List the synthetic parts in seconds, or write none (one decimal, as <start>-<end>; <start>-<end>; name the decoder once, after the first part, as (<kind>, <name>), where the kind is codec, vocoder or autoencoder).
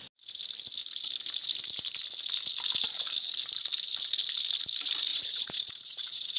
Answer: 5.1-6.4 (vocoder, Vocos)